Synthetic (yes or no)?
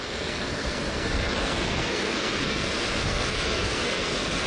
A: yes